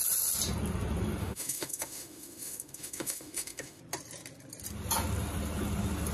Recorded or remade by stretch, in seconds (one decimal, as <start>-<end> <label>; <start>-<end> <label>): 0.0-1.2 recorded; 1.2-3.8 remade; 3.8-6.1 recorded